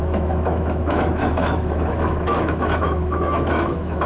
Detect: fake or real fake